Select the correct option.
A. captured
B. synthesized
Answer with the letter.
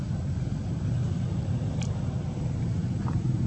A